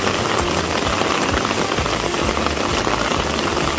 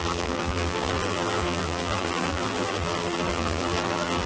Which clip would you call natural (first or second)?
first